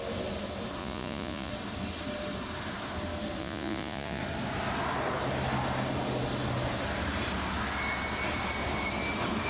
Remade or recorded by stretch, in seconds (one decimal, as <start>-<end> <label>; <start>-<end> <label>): 0.0-0.8 recorded; 0.8-1.5 remade; 1.5-3.4 recorded; 3.4-4.2 remade; 4.2-9.5 recorded